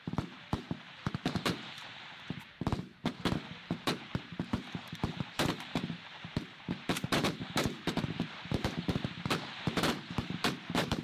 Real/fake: fake